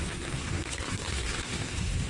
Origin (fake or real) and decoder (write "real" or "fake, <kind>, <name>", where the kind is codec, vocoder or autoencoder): fake, codec, SNAC